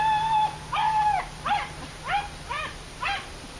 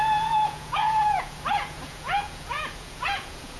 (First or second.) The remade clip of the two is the second